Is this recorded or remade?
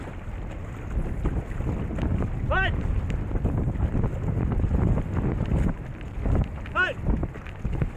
recorded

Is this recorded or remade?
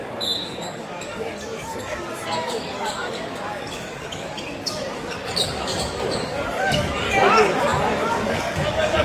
remade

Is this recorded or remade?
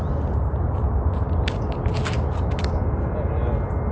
recorded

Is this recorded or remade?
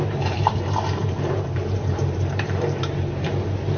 remade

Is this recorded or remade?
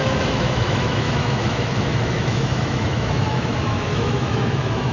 remade